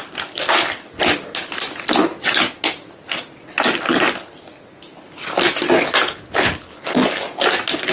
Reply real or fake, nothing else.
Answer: real